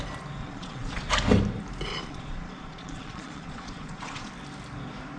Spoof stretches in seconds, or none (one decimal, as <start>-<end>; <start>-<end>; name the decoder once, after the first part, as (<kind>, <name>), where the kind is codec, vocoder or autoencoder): 0.4-1.1 (vocoder, Vocos); 1.9-4.3